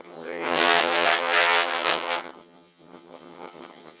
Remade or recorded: remade